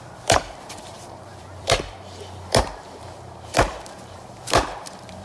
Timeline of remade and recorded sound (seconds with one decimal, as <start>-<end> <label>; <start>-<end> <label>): 0.0-5.2 remade